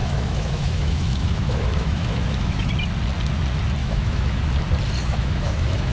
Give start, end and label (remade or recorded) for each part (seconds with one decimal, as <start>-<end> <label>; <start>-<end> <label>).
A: 0.0-2.7 remade; 2.7-3.8 recorded; 3.8-4.4 remade; 4.4-5.0 recorded; 5.0-5.9 remade